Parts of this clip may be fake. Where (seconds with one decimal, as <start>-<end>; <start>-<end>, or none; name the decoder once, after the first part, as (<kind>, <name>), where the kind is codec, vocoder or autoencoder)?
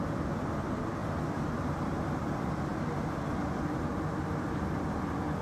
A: none